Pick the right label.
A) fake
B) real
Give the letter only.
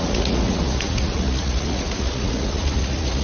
A